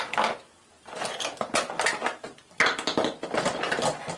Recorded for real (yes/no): yes